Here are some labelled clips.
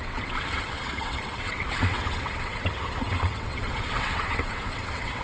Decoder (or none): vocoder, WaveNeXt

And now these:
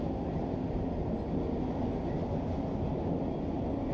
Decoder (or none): none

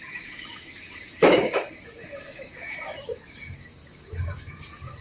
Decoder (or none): autoencoder, DAC-VAE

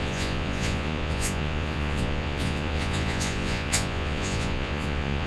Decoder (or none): vocoder, Vocos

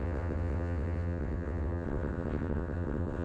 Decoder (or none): vocoder, WaveNeXt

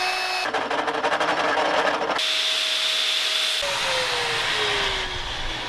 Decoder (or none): none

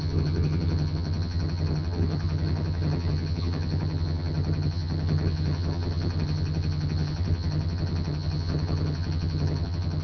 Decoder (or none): vocoder, HiFi-GAN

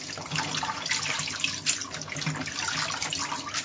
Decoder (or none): none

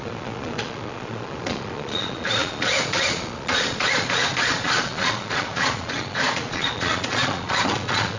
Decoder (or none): vocoder, Vocos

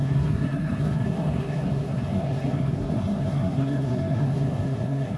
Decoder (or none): codec, SNAC